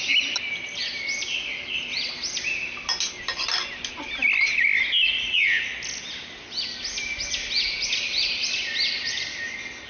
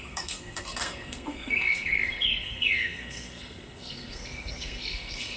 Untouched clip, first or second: first